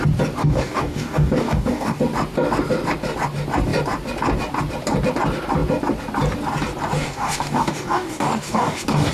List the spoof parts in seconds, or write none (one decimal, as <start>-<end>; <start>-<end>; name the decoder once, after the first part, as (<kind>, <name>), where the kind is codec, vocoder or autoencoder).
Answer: 0.4-2.0 (codec, DAC); 7.0-9.1